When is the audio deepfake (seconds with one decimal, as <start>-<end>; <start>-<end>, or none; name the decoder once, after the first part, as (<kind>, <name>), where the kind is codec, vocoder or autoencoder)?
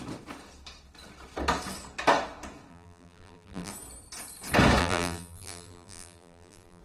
2.7-3.7 (vocoder, BigVGAN v2); 4.8-6.8